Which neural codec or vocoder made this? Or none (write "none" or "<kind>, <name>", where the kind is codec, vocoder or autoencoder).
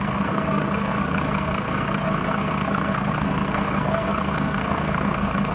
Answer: codec, SNAC